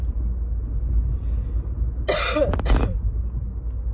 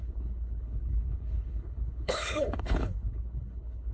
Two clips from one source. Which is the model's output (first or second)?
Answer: second